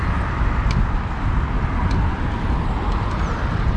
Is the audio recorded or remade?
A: recorded